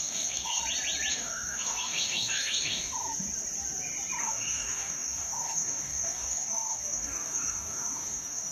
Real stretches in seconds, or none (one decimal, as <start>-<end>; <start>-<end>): 0.6-1.1; 2.9-4.2